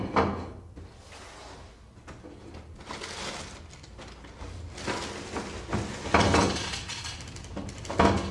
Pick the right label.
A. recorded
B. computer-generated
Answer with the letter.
A